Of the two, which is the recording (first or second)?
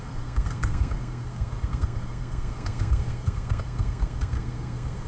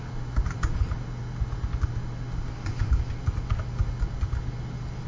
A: second